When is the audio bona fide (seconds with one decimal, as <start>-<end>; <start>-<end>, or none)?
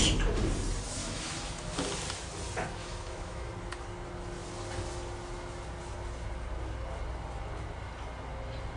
0.0-1.0; 1.8-2.8; 3.5-8.8